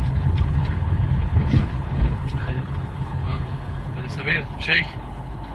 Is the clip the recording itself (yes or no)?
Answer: no